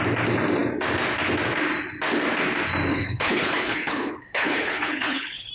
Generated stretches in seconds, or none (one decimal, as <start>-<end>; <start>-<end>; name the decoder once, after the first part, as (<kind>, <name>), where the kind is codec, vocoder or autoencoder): 2.9-5.5 (codec, HILCodec)